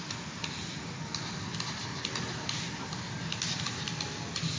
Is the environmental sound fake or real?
real